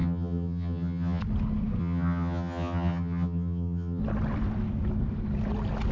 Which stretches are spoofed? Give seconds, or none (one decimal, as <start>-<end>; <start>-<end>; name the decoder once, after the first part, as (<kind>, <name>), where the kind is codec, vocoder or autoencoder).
0.0-1.2 (vocoder, HiFi-GAN); 1.8-4.0